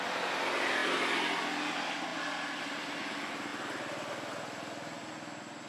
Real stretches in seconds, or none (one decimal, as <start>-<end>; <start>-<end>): 0.0-5.7